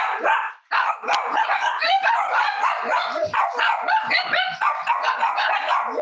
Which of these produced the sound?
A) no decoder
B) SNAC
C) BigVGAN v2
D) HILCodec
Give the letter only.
A